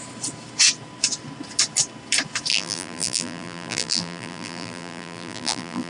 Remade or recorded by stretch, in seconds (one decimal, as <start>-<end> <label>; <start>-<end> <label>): 0.0-2.5 recorded; 2.5-5.9 remade